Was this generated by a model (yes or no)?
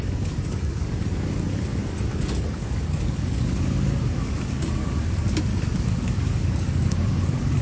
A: yes